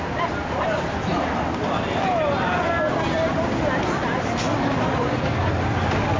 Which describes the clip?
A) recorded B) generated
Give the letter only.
A